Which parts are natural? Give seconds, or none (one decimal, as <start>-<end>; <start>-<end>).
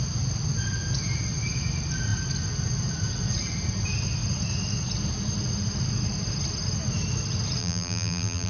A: 0.0-7.6